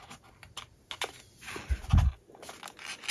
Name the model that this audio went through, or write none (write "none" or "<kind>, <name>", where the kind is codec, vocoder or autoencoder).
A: none